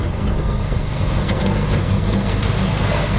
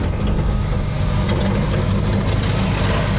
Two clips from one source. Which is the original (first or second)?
second